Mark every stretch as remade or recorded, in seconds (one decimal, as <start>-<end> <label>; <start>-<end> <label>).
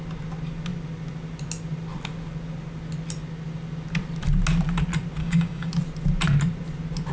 0.0-5.2 recorded; 5.2-5.7 remade; 5.7-7.1 recorded